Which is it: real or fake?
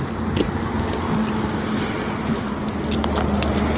real